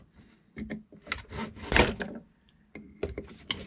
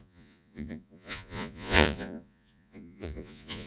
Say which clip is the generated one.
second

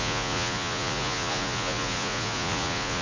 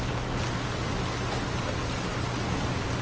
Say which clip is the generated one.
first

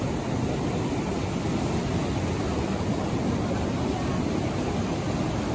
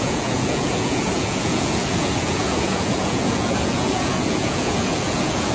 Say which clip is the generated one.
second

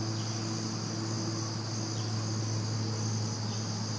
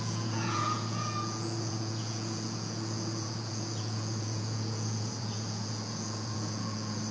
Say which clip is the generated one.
second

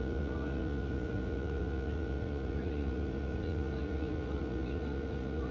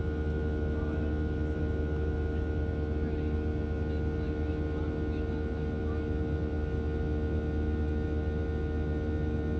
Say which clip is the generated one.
first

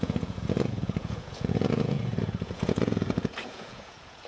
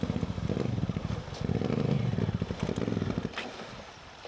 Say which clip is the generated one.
first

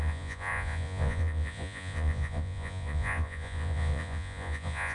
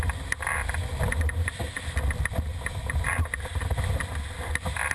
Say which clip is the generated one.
first